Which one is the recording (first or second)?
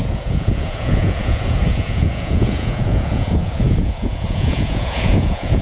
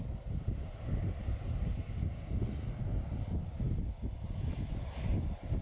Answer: second